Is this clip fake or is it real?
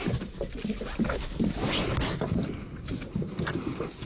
real